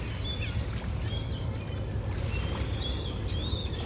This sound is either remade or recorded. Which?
recorded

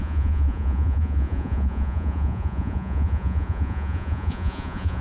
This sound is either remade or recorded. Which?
remade